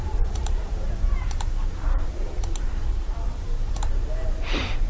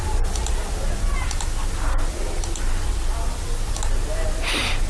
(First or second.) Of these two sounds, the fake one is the first